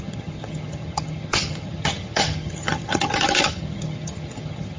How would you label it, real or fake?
fake